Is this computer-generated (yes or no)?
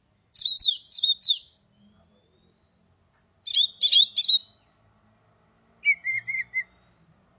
no